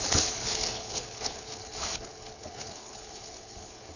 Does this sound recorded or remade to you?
remade